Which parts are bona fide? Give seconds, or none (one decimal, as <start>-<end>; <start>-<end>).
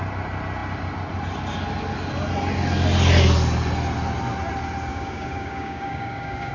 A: 0.0-4.9